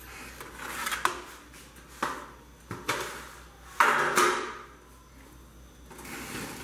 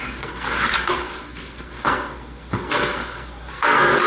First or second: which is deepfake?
second